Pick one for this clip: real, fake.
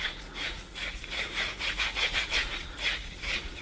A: fake